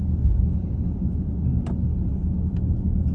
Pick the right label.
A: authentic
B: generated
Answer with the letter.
A